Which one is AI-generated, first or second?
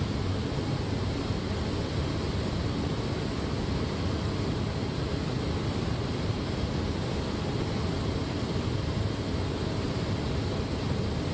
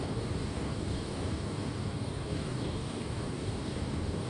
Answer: second